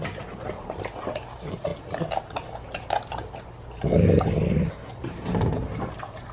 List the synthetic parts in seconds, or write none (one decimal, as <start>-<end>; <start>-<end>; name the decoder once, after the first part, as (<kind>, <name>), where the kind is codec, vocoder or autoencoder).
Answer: 0.0-1.7 (vocoder, BigVGAN v2); 3.1-6.3